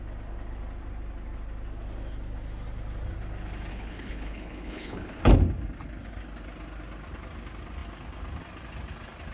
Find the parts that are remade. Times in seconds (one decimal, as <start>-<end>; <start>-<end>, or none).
3.7-5.2